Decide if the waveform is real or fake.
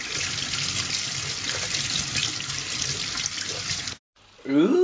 real